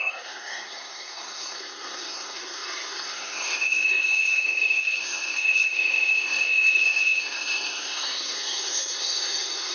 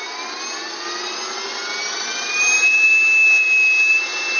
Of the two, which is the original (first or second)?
second